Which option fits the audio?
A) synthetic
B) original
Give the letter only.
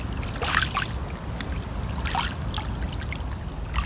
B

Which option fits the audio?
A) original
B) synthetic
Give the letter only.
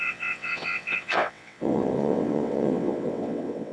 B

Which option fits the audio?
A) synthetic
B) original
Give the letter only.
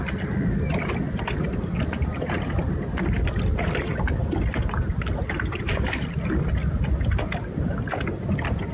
B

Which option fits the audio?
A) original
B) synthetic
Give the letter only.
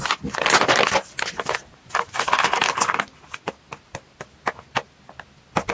A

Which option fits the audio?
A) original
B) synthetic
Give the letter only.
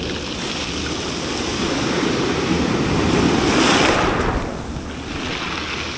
A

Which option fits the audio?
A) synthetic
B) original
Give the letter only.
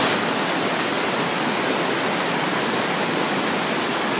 B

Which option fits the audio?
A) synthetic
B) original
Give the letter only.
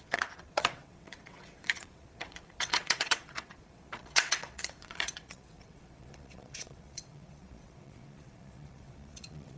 A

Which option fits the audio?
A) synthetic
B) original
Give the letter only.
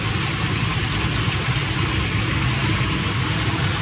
B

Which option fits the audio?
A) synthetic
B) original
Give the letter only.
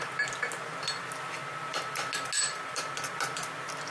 B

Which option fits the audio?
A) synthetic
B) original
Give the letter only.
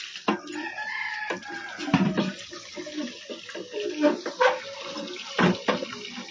B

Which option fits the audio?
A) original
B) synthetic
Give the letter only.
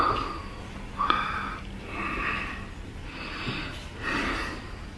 A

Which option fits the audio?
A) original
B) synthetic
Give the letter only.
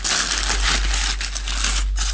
A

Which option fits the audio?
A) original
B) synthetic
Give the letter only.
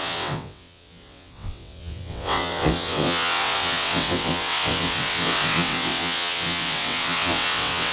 B